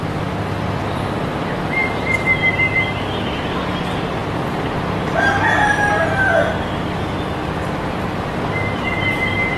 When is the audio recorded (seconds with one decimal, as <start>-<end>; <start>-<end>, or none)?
0.0-9.6